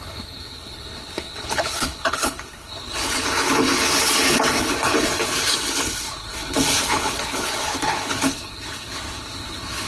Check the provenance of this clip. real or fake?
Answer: fake